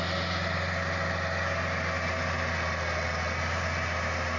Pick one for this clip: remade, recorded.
recorded